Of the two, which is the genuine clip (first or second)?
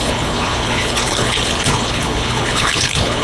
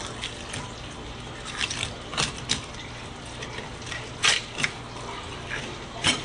second